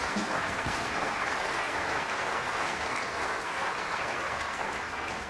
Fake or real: fake